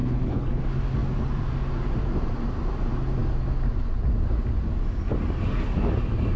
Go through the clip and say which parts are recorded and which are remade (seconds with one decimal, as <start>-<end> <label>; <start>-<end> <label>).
0.0-0.6 remade; 0.6-6.4 recorded